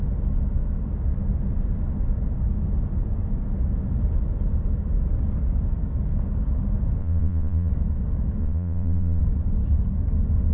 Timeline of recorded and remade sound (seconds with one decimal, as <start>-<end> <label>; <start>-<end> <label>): 0.0-7.0 recorded; 7.0-7.7 remade; 7.7-8.4 recorded; 8.4-9.2 remade; 9.2-10.5 recorded